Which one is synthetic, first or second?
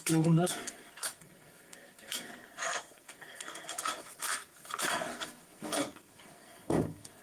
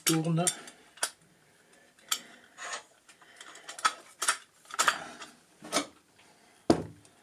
first